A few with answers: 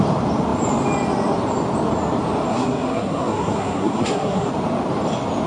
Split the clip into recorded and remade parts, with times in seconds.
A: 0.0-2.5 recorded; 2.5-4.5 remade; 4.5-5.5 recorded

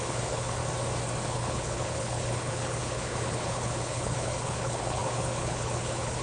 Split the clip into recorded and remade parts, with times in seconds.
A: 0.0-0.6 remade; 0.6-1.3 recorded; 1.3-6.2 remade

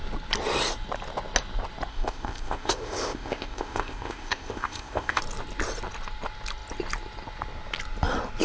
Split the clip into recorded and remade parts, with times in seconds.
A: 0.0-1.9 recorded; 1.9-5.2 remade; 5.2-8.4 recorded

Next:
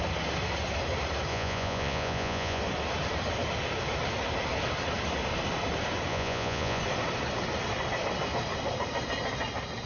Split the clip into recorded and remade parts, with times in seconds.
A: 0.0-1.3 recorded; 1.3-2.6 remade; 2.6-6.1 recorded; 6.1-6.8 remade; 6.8-9.9 recorded